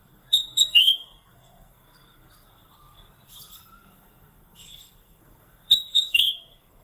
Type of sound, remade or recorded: remade